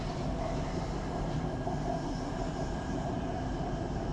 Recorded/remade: recorded